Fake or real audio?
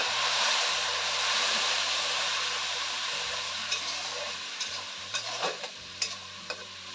fake